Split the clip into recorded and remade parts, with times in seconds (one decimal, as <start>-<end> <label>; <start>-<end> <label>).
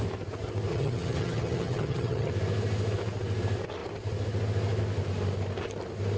0.0-0.7 recorded; 0.7-2.3 remade; 2.3-6.2 recorded